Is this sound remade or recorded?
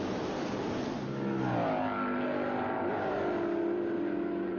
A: recorded